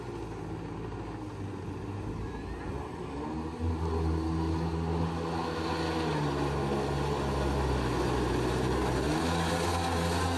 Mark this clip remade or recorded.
recorded